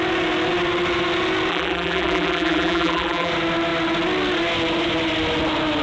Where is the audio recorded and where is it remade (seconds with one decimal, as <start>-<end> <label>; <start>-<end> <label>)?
0.0-1.5 recorded; 1.5-3.3 remade; 3.3-5.8 recorded